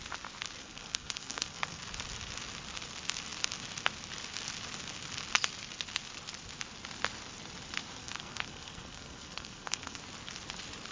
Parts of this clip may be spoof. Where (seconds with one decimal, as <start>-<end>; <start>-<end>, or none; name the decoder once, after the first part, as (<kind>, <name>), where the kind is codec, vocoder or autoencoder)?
0.6-1.8 (codec, SNAC); 8.0-10.0